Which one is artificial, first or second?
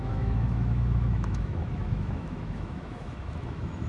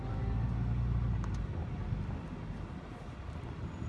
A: first